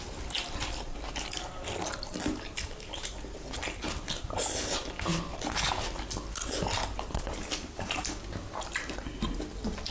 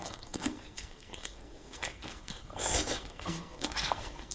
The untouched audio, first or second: first